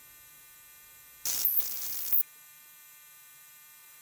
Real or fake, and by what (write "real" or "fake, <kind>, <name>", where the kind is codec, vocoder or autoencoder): real